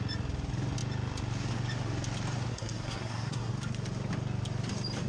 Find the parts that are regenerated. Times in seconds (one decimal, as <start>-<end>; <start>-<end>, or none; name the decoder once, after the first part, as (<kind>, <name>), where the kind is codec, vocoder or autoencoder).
2.5-3.5 (codec, SNAC)